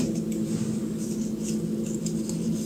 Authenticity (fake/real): real